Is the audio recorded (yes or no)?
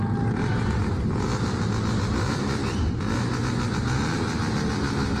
yes